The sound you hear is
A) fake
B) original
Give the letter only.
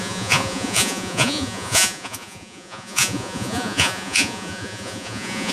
A